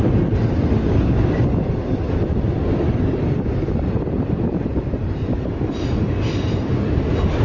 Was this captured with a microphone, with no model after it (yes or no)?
yes